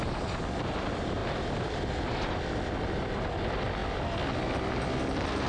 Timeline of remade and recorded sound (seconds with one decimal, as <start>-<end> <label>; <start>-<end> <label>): 0.0-1.2 recorded; 1.2-1.9 remade; 1.9-5.5 recorded